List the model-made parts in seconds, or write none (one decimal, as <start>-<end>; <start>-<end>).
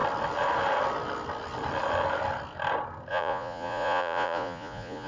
3.1-5.1